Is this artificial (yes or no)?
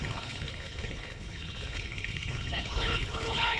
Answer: yes